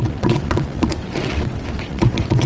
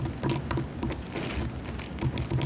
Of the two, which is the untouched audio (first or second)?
second